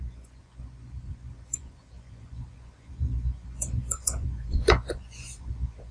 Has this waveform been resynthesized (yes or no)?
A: yes